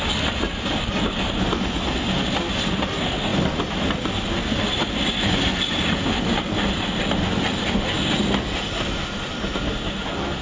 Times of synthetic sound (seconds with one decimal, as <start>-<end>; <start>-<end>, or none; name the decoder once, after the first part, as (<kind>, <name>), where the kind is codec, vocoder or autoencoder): none